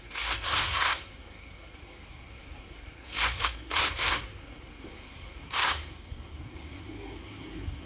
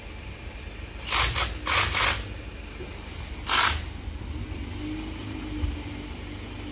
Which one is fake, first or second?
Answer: first